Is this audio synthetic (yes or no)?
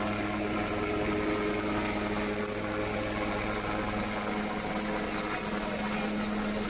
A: no